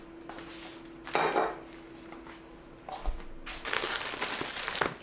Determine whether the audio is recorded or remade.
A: recorded